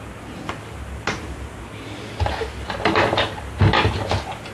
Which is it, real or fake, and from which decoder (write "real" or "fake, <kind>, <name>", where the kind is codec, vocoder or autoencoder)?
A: real